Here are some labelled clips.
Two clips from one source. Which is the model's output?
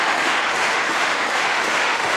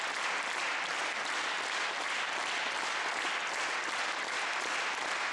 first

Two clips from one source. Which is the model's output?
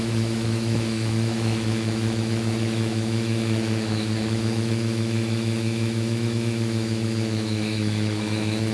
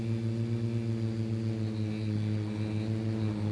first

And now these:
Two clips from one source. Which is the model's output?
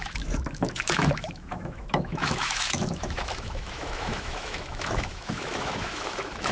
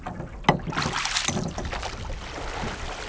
first